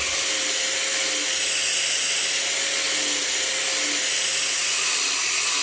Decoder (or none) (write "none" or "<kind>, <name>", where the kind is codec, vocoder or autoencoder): none